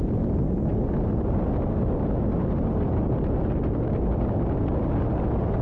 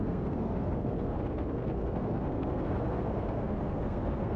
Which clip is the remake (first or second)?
second